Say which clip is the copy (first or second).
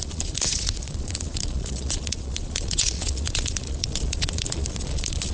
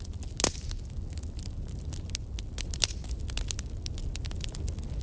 first